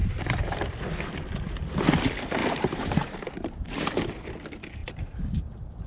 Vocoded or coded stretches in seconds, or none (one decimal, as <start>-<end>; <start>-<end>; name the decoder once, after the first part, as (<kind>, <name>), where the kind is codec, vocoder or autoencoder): 0.0-0.7 (vocoder, BigVGAN v2); 2.4-3.9; 4.8-5.4